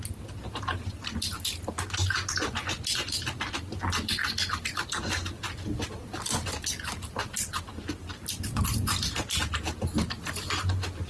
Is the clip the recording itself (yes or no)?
yes